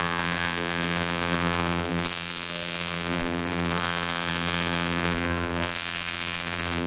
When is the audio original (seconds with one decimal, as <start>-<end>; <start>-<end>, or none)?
none

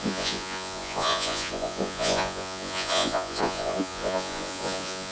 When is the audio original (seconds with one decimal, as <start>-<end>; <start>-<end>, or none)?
none

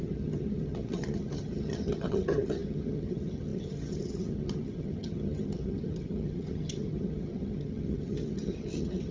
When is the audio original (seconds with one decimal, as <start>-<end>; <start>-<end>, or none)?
none

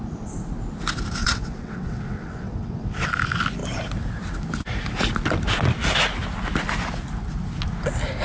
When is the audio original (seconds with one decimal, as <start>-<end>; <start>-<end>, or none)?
0.0-1.2; 3.1-8.2

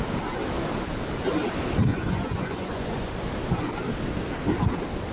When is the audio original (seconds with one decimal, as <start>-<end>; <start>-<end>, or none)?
0.0-1.9; 3.1-5.1

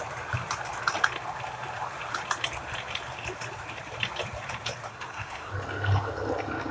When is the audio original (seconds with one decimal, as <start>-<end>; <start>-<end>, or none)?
0.0-4.9; 5.5-6.7

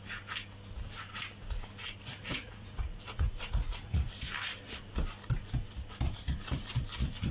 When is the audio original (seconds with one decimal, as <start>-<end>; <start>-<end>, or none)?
0.0-2.3; 4.1-7.3

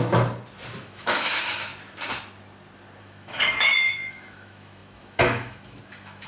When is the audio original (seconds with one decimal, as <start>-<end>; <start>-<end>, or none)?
0.0-0.8; 1.7-3.0